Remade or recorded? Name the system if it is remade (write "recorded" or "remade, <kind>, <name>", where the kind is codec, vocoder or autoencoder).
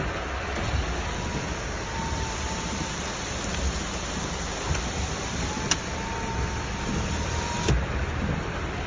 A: recorded